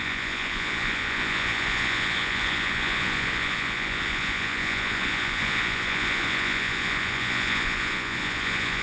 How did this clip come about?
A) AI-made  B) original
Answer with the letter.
A